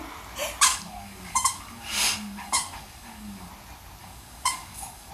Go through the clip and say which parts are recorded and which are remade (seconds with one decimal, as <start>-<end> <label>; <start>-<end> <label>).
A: 0.0-0.7 recorded; 0.7-3.5 remade; 3.5-4.0 recorded; 4.0-5.1 remade